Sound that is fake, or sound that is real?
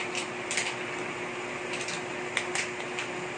real